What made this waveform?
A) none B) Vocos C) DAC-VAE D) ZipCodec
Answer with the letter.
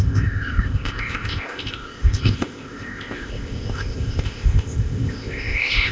D